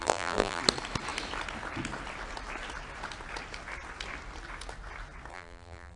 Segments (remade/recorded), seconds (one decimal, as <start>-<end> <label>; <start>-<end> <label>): 0.0-0.6 remade; 0.6-5.3 recorded; 5.3-6.0 remade